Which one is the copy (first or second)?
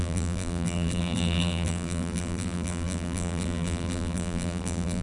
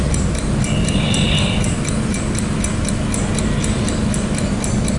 first